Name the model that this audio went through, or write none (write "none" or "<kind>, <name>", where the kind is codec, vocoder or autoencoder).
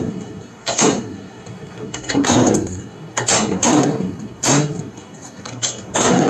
codec, SNAC